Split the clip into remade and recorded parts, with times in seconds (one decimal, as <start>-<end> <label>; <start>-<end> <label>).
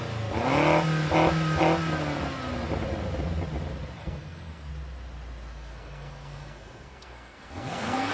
0.0-4.0 recorded; 4.0-4.7 remade; 4.7-5.5 recorded; 5.5-8.1 remade